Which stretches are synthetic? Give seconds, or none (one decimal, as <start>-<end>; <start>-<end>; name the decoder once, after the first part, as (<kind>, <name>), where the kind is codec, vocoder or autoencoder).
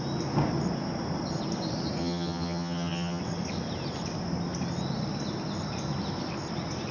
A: 2.0-3.2 (vocoder, HiFi-GAN)